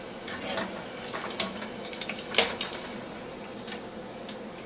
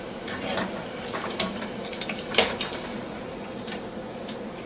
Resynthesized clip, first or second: second